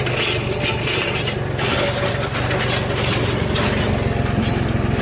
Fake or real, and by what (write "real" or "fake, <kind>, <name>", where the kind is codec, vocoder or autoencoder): real